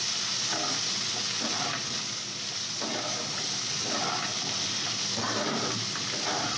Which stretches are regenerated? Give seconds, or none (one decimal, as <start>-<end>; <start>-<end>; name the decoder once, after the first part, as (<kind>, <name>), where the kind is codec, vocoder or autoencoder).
none